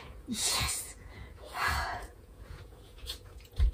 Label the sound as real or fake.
fake